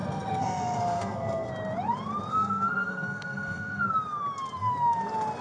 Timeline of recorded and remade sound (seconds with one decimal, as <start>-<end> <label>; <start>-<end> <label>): 0.0-1.5 remade; 1.5-2.3 recorded; 2.3-3.9 remade; 3.9-5.4 recorded